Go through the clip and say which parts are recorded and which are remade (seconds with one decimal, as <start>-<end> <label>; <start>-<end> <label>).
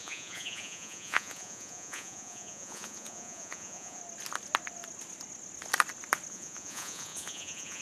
0.0-4.0 remade; 4.0-6.3 recorded; 6.3-7.8 remade